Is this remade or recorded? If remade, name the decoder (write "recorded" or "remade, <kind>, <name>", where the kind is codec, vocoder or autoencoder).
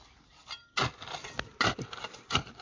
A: recorded